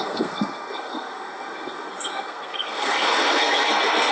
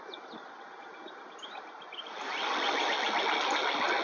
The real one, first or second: second